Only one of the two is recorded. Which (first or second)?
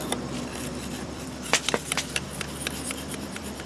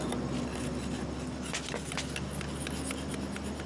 second